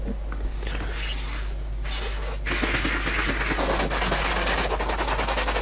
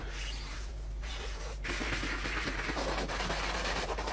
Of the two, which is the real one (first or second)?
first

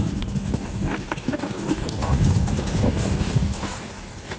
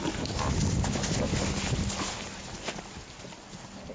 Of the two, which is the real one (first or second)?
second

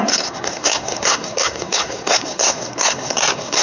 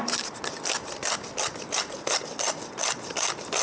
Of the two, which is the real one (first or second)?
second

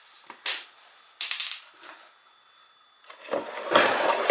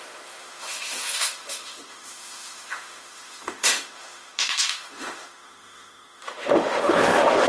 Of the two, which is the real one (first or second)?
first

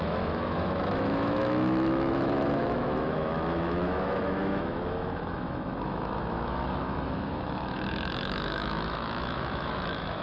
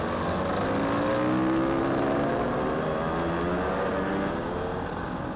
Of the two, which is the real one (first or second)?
second